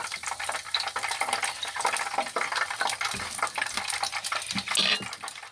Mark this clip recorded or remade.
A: recorded